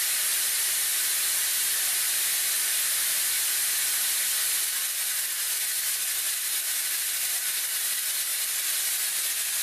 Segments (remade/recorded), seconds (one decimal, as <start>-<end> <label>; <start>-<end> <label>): 0.0-0.9 recorded; 0.9-4.2 remade; 4.2-9.6 recorded